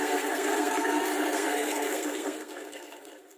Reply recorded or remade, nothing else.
remade